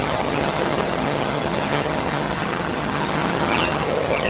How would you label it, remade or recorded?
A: remade